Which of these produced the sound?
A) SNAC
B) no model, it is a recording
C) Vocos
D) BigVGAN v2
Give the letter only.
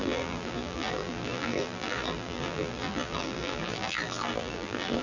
D